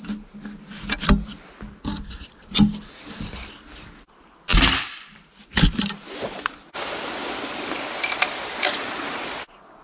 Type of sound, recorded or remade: recorded